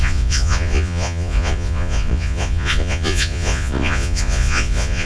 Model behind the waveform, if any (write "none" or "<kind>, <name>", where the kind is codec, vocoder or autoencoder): vocoder, Vocos